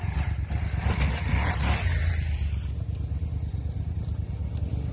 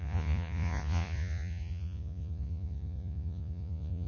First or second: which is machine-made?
second